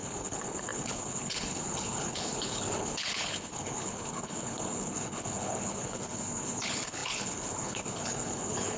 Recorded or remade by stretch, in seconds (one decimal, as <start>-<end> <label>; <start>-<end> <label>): 0.0-8.8 remade